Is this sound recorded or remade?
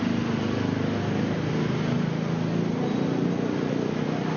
recorded